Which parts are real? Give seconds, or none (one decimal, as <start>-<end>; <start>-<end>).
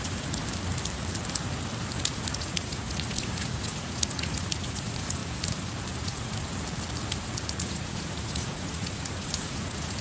0.4-2.0; 5.2-6.0; 6.5-7.4